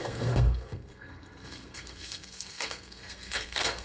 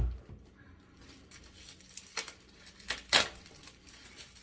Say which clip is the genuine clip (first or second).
second